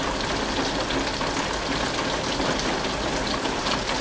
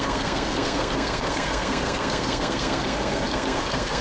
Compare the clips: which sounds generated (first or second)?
second